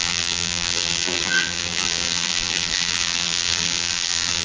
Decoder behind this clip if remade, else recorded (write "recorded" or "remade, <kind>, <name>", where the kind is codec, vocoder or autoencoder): remade, vocoder, BigVGAN v2